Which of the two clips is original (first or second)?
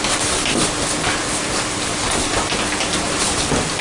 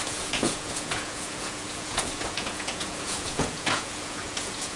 first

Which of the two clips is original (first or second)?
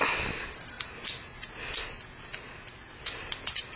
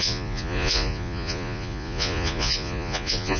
first